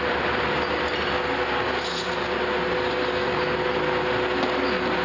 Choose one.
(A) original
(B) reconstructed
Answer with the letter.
A